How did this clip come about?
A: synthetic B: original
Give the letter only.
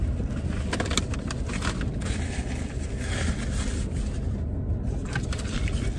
B